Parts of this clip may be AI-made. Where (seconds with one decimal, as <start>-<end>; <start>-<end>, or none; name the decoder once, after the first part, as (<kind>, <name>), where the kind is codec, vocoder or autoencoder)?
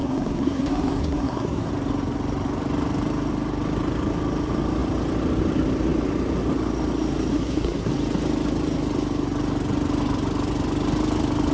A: 0.0-1.7 (codec, SNAC); 7.3-7.9